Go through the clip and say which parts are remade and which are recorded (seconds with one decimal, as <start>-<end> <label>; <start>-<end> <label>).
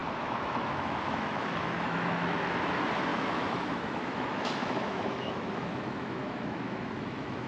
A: 0.0-2.7 remade; 2.7-3.1 recorded; 3.1-7.5 remade